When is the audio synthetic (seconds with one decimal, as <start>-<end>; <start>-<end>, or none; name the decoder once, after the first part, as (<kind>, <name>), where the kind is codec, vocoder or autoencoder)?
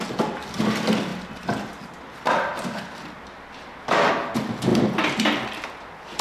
none